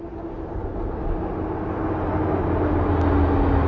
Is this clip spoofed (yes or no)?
no